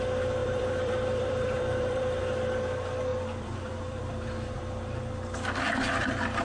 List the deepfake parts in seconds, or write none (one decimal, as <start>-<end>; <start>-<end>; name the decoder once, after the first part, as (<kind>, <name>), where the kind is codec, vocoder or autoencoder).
0.4-2.2 (vocoder, BigVGAN v2); 3.1-4.6